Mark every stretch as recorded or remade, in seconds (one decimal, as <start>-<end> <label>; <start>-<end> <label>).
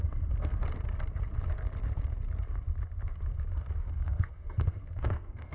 0.0-0.6 remade; 0.6-3.9 recorded; 3.9-5.5 remade